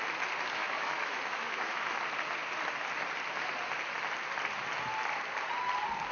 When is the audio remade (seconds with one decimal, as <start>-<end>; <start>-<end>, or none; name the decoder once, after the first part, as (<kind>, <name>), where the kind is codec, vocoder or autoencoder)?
0.6-2.0 (autoencoder, DAC-VAE)